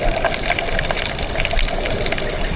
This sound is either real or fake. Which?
real